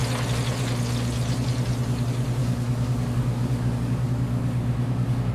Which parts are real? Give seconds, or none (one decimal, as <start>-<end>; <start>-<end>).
0.0-2.4